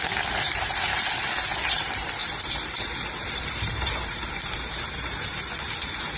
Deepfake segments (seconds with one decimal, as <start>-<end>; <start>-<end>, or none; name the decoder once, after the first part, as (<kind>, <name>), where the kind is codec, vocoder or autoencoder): 0.9-1.8 (vocoder, BigVGAN v2); 2.2-6.2